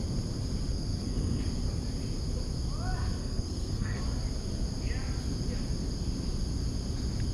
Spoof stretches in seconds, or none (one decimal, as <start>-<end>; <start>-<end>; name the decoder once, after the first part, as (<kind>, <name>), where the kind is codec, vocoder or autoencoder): 0.7-1.5 (codec, SNAC); 3.2-4.0